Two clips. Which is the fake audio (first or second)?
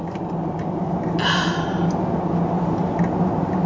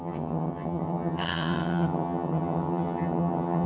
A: second